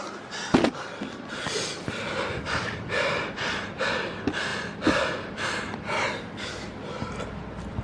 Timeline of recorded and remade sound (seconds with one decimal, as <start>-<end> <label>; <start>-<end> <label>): 0.0-7.8 recorded

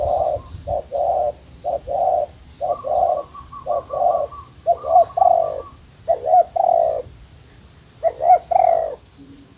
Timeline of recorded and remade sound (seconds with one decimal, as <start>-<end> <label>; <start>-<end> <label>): 0.0-0.9 remade; 0.9-1.7 recorded; 1.7-8.8 remade; 8.8-9.6 recorded

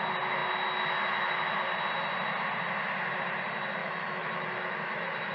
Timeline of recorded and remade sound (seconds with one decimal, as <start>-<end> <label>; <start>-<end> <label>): 0.0-3.8 recorded; 3.8-5.3 remade

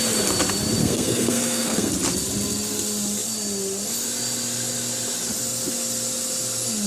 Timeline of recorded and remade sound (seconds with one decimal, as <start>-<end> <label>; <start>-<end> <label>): 0.0-0.8 recorded; 0.8-1.9 remade; 1.9-6.9 recorded

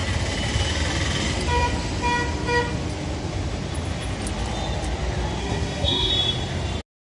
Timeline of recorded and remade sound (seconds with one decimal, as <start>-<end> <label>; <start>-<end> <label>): 0.0-5.4 recorded; 5.4-6.1 remade; 6.1-7.2 recorded